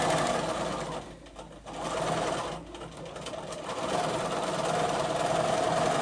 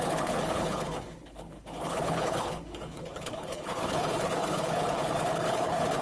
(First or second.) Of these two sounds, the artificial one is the second